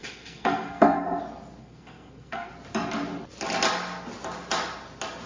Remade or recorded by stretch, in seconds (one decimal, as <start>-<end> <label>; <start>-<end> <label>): 0.0-1.2 remade; 1.2-1.6 recorded; 1.6-2.5 remade; 2.5-5.3 recorded